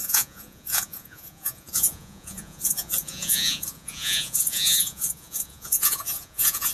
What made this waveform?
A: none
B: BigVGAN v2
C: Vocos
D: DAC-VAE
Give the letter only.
C